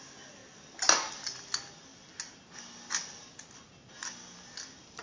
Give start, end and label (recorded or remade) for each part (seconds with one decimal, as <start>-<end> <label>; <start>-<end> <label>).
0.0-5.0 recorded